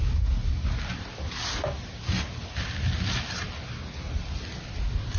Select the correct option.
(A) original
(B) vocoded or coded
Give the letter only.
A